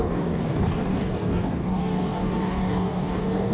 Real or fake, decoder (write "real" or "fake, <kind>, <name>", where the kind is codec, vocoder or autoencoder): fake, codec, DAC